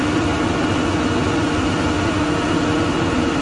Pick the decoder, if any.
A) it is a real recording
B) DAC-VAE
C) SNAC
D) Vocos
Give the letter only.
A